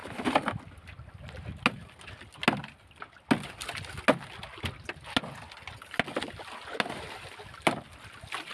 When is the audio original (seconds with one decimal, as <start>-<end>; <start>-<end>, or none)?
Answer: 0.0-8.5